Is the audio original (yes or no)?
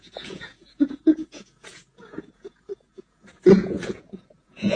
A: no